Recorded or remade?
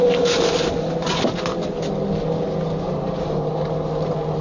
recorded